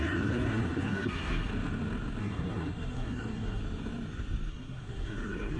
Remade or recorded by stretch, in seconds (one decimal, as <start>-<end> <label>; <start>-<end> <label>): 0.0-1.5 remade; 1.5-2.2 recorded; 2.2-3.6 remade; 3.6-4.5 recorded; 4.5-5.6 remade